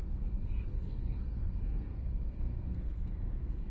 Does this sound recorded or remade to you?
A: remade